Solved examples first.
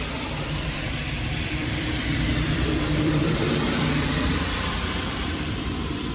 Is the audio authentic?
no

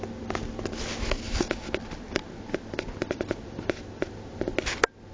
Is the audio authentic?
yes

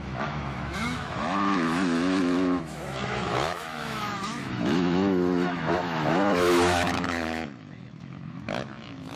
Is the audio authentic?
no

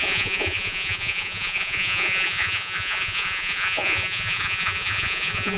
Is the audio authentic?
no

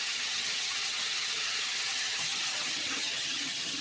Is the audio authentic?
no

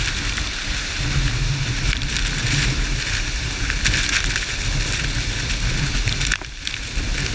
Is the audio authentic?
yes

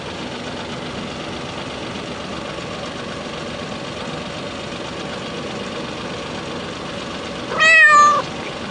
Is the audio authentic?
yes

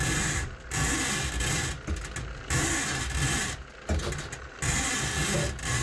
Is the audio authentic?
yes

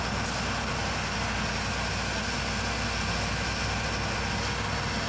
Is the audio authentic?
yes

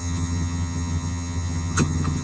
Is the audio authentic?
no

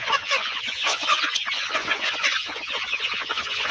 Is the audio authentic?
no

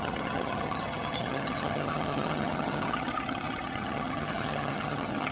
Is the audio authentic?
no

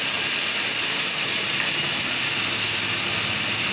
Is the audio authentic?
yes